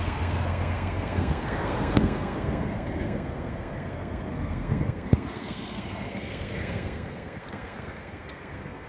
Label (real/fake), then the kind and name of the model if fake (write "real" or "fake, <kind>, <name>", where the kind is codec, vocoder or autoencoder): fake, codec, SNAC